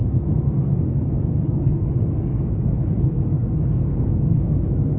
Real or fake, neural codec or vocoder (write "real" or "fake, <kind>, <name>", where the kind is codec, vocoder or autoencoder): fake, codec, SNAC